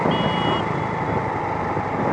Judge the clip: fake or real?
real